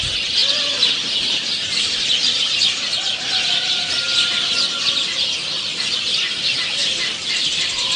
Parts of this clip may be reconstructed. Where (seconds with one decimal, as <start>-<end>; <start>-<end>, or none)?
6.8-8.0